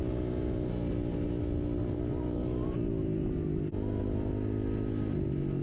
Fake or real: real